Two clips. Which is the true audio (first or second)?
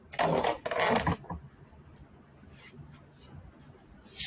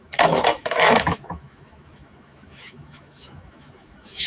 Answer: first